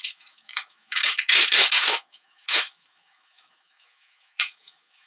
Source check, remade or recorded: remade